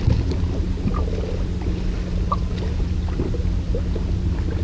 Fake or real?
real